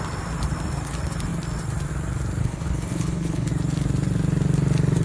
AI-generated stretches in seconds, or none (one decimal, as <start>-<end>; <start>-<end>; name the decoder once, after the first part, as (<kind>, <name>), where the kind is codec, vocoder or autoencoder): 2.4-3.5 (codec, HILCodec)